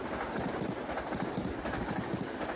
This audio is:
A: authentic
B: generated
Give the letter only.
A